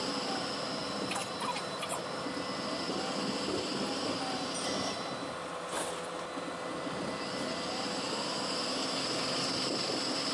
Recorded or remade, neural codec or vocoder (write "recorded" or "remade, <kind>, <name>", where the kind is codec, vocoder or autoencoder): recorded